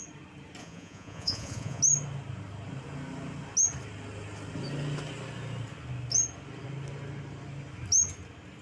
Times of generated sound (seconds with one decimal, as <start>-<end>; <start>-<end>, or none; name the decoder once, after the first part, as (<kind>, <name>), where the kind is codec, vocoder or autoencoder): 0.6-1.8 (vocoder, Vocos)